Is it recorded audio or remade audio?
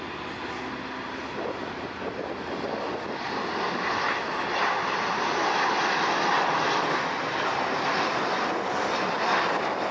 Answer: recorded